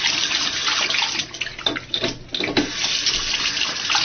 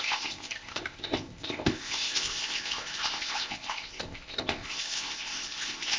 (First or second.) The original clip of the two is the first